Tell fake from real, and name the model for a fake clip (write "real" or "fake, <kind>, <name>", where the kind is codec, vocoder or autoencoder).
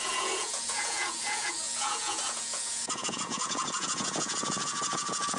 fake, vocoder, Vocos